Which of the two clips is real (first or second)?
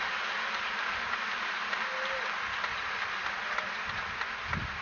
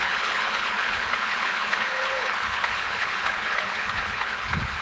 first